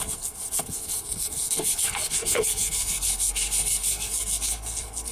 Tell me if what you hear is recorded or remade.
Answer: remade